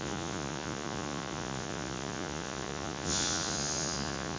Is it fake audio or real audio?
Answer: fake